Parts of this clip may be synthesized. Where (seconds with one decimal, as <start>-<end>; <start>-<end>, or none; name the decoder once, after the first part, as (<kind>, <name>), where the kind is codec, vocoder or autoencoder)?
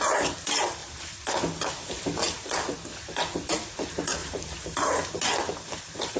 4.2-5.1 (vocoder, BigVGAN v2)